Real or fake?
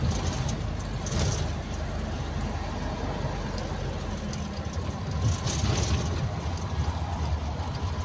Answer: real